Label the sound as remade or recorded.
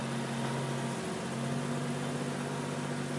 recorded